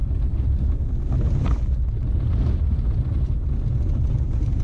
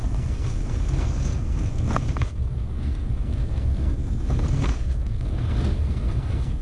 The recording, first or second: first